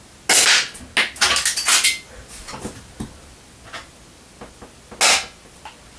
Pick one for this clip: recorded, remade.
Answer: recorded